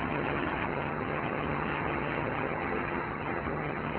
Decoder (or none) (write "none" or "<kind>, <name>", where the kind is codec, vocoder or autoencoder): vocoder, HiFi-GAN